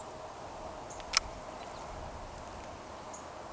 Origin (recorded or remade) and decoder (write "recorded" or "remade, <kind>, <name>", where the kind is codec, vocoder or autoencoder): recorded